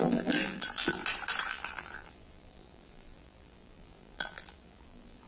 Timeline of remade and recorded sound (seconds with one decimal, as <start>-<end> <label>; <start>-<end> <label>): 0.0-1.0 remade; 1.0-1.5 recorded; 1.5-5.3 remade